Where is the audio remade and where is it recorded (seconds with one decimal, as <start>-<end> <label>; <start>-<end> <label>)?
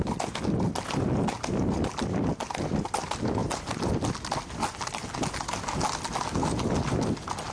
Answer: 0.0-7.5 recorded